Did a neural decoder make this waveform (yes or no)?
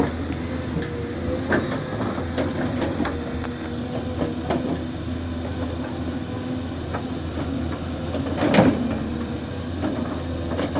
no